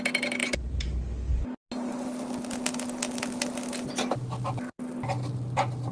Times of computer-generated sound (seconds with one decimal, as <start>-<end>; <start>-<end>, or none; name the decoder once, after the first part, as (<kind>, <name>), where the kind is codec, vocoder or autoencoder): none